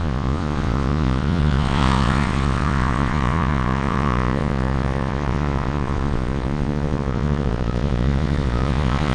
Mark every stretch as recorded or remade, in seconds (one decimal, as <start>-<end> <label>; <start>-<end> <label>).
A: 0.0-9.1 remade